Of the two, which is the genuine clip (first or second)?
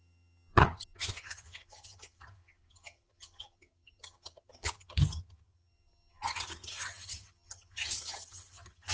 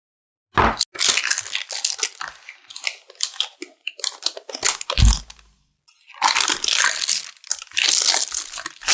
second